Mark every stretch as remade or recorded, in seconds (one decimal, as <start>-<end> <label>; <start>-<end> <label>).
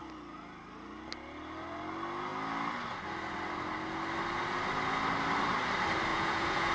0.0-6.1 recorded; 6.1-6.7 remade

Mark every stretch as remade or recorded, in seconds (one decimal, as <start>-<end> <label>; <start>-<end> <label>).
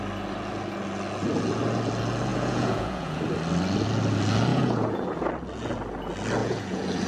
0.0-2.3 recorded; 2.3-3.2 remade; 3.2-4.5 recorded; 4.5-5.3 remade; 5.3-6.4 recorded; 6.4-7.1 remade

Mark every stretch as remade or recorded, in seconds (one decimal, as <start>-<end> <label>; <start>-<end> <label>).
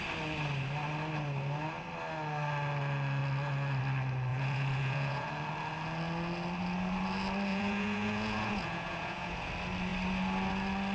0.0-4.3 recorded; 4.3-5.3 remade; 5.3-7.5 recorded; 7.5-9.5 remade; 9.5-10.9 recorded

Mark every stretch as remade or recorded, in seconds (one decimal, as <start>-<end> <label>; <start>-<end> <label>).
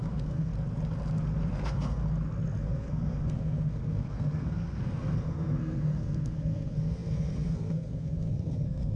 0.0-0.5 remade; 0.5-1.5 recorded; 1.5-2.0 remade; 2.0-2.6 recorded; 2.6-9.0 remade